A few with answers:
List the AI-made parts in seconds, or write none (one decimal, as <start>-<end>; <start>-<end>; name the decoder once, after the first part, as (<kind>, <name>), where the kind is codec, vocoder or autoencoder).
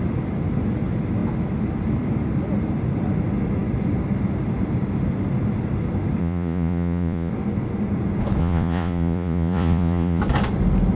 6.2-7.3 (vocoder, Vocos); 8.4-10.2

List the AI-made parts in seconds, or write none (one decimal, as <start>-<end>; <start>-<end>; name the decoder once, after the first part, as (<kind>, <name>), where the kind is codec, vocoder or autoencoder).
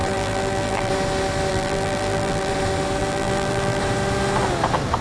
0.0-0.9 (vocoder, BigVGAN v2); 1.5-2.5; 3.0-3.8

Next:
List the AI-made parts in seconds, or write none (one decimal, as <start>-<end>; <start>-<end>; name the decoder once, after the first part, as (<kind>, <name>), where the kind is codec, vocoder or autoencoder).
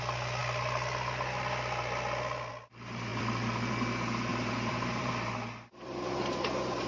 4.3-5.1 (vocoder, BigVGAN v2)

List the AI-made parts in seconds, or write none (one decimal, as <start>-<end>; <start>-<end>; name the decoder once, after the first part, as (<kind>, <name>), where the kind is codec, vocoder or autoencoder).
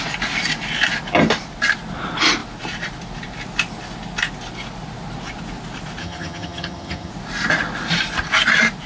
6.0-7.1 (vocoder, HiFi-GAN)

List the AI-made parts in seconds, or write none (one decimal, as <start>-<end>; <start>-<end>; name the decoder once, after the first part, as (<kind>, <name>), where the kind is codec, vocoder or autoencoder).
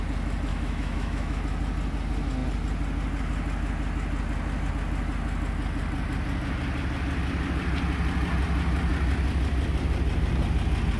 0.5-1.4 (autoencoder, DAC-VAE)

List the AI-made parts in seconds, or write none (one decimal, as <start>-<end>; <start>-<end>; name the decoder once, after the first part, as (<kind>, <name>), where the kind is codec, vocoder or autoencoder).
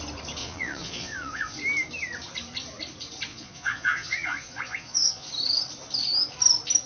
0.4-1.6 (vocoder, Vocos); 3.3-5.3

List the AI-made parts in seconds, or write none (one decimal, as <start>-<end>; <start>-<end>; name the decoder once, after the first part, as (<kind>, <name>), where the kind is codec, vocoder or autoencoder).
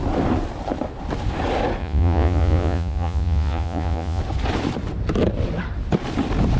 1.8-4.2 (vocoder, Vocos)